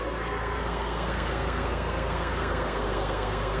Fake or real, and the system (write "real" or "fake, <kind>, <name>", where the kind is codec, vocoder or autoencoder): fake, codec, SNAC